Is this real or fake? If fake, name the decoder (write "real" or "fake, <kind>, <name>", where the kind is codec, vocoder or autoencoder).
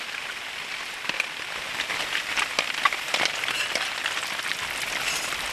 fake, vocoder, BigVGAN v2